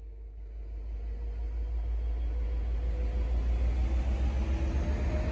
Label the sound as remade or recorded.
recorded